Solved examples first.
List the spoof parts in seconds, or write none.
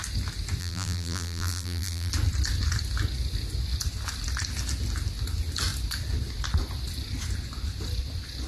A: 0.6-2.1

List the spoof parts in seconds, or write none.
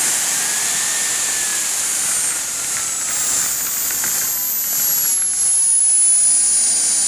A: none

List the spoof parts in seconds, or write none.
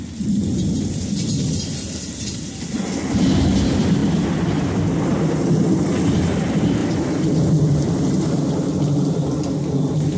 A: 6.8-8.8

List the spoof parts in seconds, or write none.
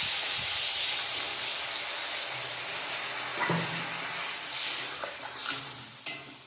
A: none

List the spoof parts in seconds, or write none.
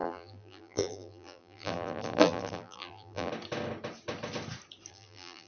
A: 0.0-3.3; 4.9-5.5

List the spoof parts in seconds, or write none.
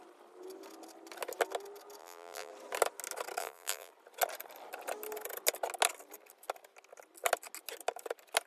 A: 2.0-2.5; 3.4-3.9